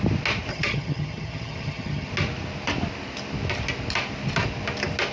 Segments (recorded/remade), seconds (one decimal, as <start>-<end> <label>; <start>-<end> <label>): 0.0-0.5 recorded; 0.5-2.1 remade; 2.1-5.1 recorded